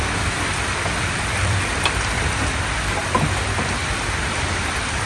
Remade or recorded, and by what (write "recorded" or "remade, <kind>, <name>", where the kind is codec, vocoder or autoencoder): remade, vocoder, BigVGAN v2